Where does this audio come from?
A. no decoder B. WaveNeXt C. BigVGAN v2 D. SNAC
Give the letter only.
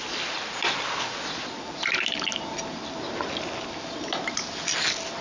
A